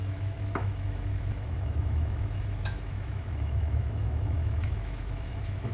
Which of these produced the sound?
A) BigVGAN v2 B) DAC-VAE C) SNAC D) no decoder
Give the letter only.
B